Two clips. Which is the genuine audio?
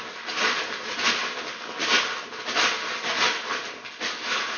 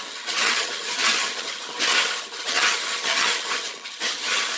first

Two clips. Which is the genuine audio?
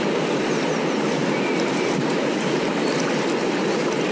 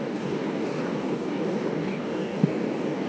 first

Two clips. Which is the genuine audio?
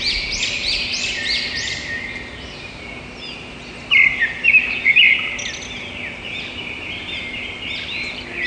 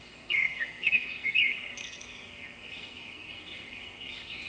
first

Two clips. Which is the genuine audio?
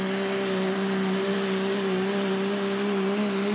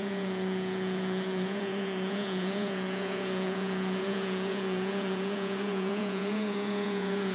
first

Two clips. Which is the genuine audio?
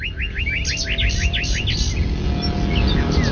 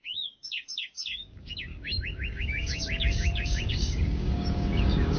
first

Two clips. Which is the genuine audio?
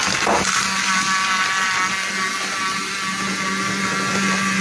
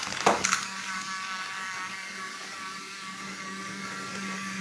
first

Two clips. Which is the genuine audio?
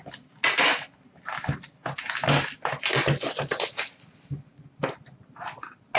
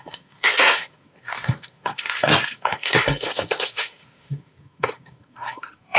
first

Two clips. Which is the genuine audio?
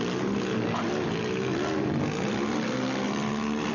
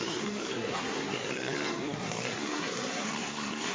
first